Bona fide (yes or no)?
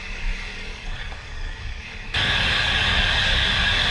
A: no